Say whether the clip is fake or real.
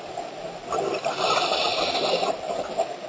real